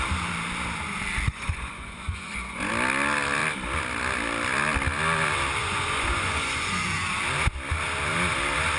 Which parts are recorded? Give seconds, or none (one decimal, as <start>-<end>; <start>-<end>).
0.0-1.3; 2.7-5.6; 7.1-8.8